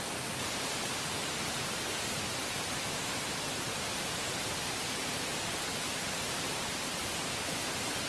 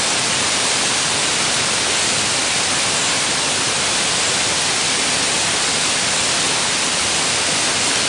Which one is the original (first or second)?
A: second